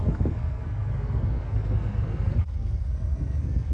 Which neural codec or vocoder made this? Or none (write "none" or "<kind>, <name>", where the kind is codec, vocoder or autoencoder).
codec, SNAC